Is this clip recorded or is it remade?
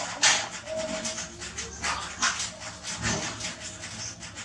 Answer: recorded